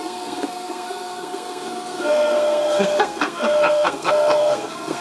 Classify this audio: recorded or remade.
remade